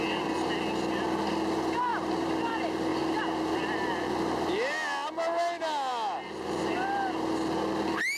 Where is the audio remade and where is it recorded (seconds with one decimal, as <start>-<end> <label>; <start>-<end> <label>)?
0.0-1.9 recorded; 1.9-2.5 remade; 2.5-2.9 recorded; 2.9-3.8 remade; 3.8-8.2 recorded